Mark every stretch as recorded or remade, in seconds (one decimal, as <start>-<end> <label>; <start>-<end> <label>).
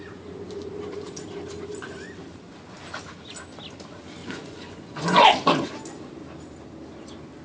0.0-4.2 recorded; 4.2-5.3 remade; 5.3-7.4 recorded